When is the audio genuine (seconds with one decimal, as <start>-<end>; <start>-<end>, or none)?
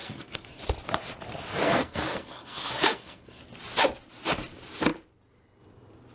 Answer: 0.6-1.6; 3.4-6.1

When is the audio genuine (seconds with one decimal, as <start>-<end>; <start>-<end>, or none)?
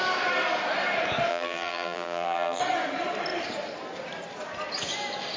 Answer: 0.0-1.3; 2.6-5.4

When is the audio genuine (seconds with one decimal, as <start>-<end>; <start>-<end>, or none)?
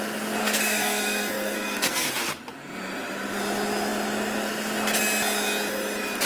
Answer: 0.0-0.4; 2.1-6.3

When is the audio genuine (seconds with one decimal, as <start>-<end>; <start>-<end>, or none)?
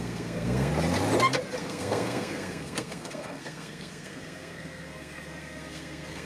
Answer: 0.7-1.6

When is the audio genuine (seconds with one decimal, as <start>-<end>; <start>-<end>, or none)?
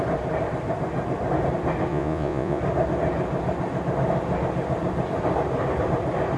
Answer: 0.0-1.9; 2.6-6.4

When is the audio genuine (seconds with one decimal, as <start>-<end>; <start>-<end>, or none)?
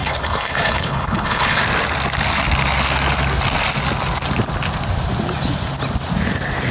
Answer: 1.6-6.7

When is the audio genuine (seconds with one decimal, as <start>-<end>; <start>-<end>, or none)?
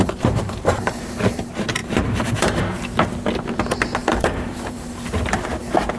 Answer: 1.0-1.8; 2.6-4.0; 5.0-6.0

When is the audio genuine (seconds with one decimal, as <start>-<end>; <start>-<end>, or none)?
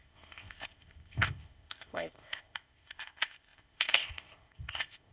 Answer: none